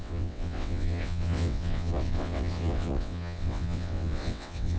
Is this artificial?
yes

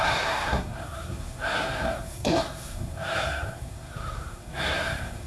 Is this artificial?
yes